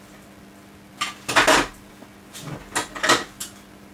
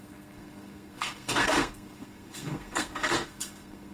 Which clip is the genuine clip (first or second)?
first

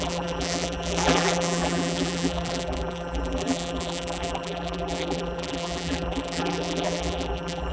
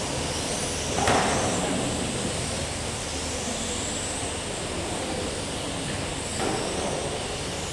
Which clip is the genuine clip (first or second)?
second